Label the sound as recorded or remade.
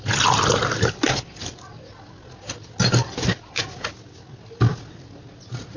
recorded